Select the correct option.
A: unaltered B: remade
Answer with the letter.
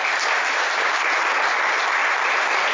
A